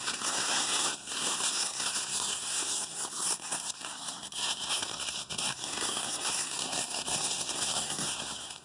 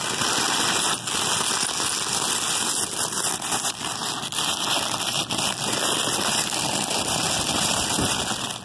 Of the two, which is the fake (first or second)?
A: first